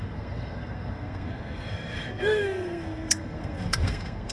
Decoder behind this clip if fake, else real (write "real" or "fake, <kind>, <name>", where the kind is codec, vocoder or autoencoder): fake, codec, SNAC